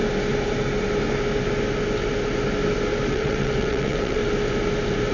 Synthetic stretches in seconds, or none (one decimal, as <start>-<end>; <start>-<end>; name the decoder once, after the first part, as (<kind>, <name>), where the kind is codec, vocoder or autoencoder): 3.1-4.2 (vocoder, WaveNeXt)